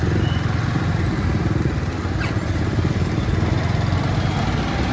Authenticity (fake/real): real